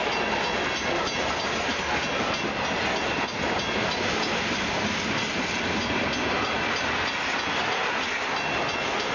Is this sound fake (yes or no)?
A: no